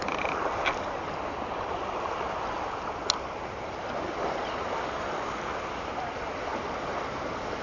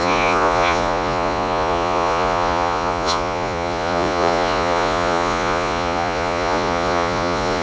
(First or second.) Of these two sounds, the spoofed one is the second